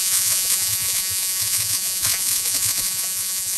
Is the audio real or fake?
fake